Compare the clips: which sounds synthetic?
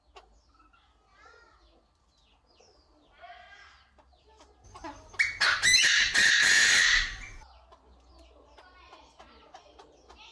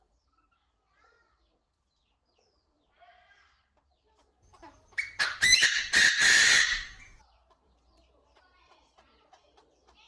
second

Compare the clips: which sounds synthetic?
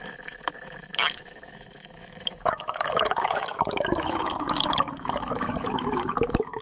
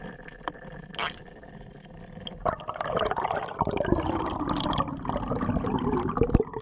first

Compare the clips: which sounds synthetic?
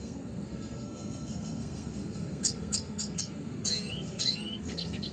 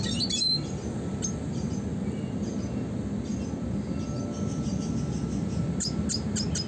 first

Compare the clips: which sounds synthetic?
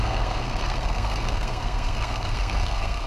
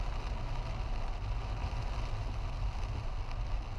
first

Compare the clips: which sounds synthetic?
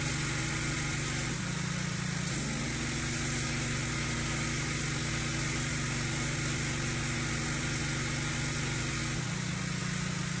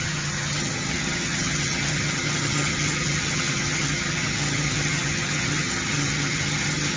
second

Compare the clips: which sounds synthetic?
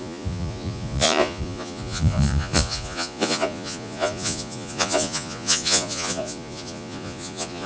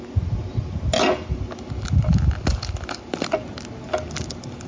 first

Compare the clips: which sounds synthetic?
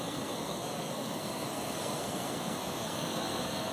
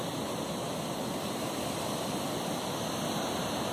first